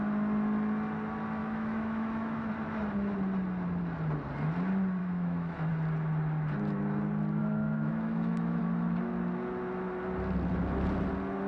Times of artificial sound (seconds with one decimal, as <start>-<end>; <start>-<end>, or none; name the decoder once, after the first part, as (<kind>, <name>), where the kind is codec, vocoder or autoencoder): 1.4-2.5 (autoencoder, DAC-VAE); 5.0-5.7; 7.4-8.6